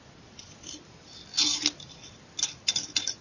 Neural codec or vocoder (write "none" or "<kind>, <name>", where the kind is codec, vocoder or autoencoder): none